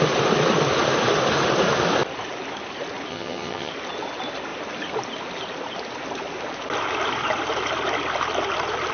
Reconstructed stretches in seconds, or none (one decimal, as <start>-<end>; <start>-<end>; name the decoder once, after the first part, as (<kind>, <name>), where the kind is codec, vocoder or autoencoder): 3.1-3.7 (vocoder, HiFi-GAN)